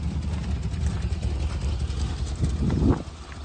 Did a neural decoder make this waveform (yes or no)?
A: no